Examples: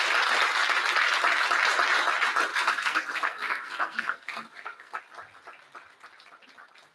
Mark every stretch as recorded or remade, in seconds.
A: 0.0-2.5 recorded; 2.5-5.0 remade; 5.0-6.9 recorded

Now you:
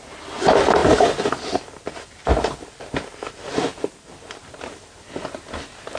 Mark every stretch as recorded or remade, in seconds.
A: 0.0-6.0 recorded

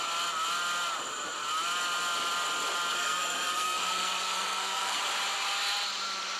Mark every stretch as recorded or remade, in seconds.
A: 0.0-2.9 recorded; 2.9-5.0 remade; 5.0-6.4 recorded

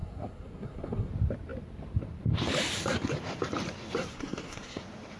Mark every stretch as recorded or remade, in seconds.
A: 0.0-1.1 remade; 1.1-4.1 recorded; 4.1-4.8 remade; 4.8-5.2 recorded

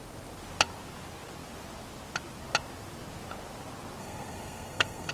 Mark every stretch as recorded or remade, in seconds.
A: 0.0-4.0 recorded; 4.0-5.1 remade

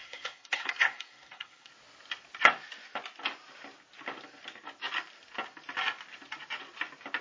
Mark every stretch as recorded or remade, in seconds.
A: 0.0-1.7 remade; 1.7-7.2 recorded

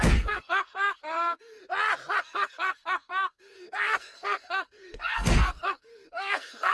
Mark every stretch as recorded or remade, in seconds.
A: 0.0-1.6 remade; 1.6-2.2 recorded; 2.2-6.7 remade